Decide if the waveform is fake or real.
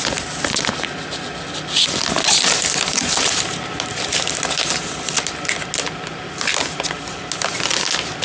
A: real